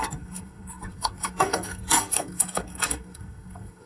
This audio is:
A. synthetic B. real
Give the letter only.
A